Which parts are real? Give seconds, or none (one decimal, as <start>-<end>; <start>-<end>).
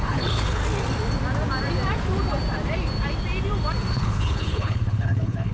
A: 0.6-3.9